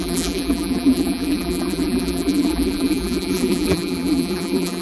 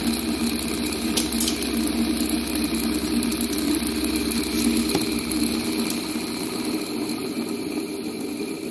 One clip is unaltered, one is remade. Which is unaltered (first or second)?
second